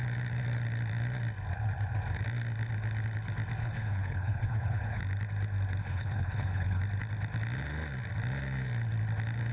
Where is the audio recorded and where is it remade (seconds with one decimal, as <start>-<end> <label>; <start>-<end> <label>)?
0.0-3.6 recorded; 3.6-5.0 remade; 5.0-5.8 recorded; 5.8-6.8 remade; 6.8-9.5 recorded